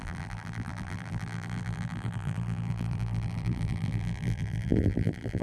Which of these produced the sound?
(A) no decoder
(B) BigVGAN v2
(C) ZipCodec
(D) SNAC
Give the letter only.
B